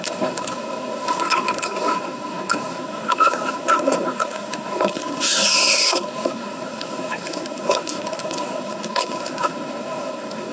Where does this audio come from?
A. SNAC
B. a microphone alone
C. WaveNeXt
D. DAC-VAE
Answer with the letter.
A